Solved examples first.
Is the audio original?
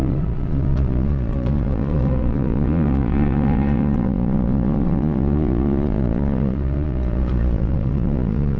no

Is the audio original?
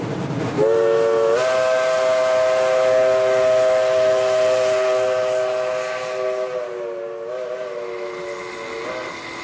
yes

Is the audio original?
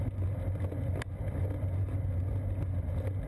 yes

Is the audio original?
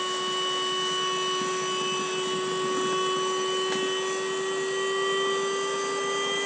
yes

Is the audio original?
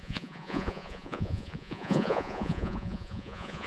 no